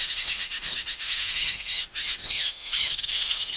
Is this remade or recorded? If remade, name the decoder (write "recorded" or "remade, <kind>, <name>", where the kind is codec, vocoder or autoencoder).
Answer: remade, autoencoder, DAC-VAE